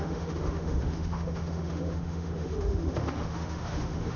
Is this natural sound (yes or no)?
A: no